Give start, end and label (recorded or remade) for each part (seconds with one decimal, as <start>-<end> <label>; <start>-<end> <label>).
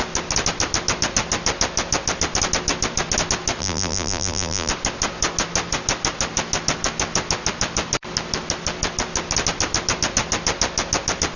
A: 0.0-3.6 recorded; 3.6-4.7 remade; 4.7-11.4 recorded